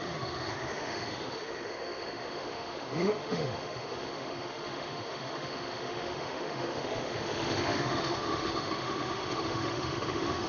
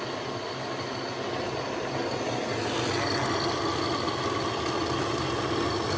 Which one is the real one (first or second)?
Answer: second